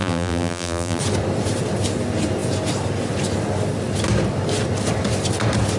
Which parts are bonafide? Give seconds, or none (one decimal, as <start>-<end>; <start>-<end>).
1.0-5.8